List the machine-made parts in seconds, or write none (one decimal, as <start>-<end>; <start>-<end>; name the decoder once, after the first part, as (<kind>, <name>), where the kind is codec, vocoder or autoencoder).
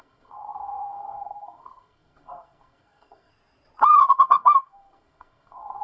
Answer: 0.0-3.3 (codec, SNAC); 4.0-5.8